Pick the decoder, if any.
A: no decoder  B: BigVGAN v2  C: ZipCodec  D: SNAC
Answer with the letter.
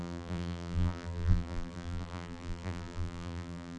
B